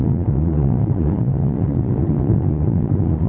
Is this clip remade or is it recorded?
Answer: remade